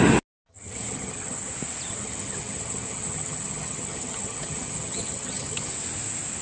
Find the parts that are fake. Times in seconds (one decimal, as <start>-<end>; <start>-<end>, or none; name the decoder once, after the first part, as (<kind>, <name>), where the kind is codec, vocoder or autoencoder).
0.5-1.5 (vocoder, HiFi-GAN); 1.9-5.7